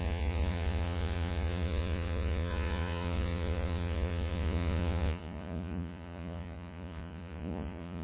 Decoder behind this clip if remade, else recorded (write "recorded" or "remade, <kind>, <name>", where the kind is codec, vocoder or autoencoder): remade, vocoder, Vocos